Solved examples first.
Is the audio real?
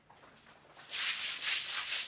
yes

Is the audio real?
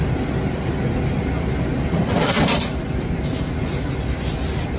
yes